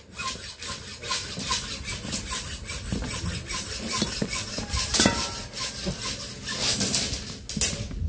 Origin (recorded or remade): recorded